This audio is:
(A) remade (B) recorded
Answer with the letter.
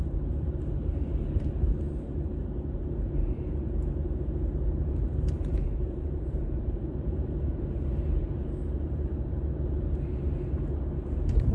A